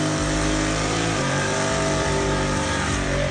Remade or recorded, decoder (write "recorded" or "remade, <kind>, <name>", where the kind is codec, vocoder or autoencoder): remade, vocoder, BigVGAN v2